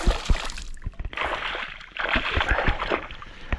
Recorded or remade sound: recorded